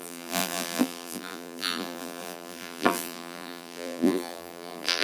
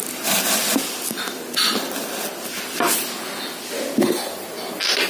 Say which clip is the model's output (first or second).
first